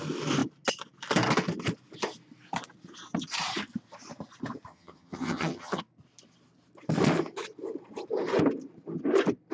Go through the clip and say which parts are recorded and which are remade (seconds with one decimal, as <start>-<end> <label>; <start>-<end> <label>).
0.0-4.7 recorded; 4.7-5.8 remade; 5.8-9.5 recorded